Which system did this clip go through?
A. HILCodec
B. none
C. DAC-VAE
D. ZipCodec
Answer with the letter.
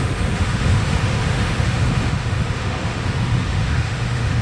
C